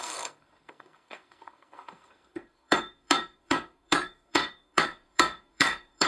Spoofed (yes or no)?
yes